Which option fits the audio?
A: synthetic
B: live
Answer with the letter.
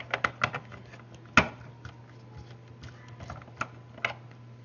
B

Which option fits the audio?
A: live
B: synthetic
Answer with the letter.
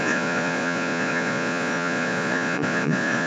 B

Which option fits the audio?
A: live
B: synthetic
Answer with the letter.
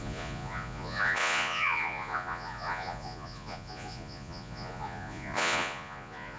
B